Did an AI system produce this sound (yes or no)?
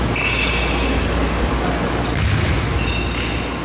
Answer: no